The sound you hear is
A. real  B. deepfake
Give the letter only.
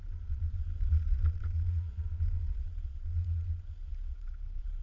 B